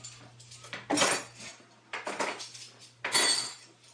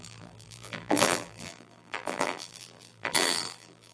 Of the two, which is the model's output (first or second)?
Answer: second